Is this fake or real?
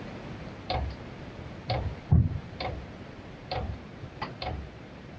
fake